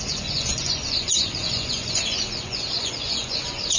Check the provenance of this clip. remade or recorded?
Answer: remade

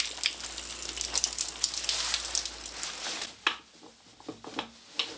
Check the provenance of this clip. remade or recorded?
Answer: recorded